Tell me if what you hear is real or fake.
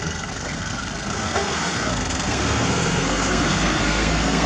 fake